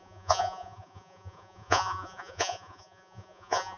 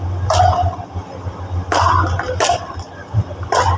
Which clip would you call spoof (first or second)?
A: first